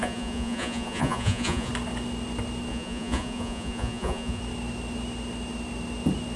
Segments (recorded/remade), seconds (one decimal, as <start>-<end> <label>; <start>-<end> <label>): 0.0-1.7 remade; 1.7-2.7 recorded; 2.7-4.4 remade; 4.4-6.4 recorded